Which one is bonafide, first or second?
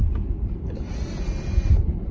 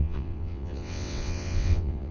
first